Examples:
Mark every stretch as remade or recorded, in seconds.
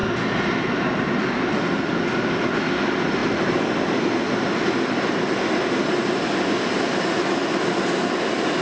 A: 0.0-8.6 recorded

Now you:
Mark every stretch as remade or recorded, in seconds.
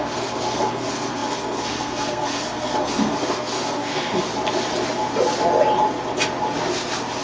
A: 0.0-4.2 remade; 4.2-7.2 recorded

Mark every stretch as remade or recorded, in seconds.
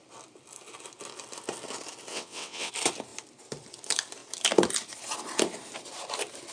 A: 0.0-2.1 recorded; 2.1-2.7 remade; 2.7-6.5 recorded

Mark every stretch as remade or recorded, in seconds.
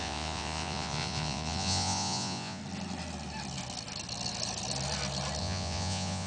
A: 0.0-2.6 remade; 2.6-5.4 recorded; 5.4-6.3 remade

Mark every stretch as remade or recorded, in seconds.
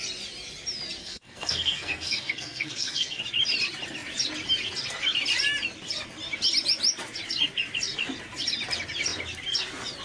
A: 0.0-1.0 recorded; 1.0-3.2 remade; 3.2-10.0 recorded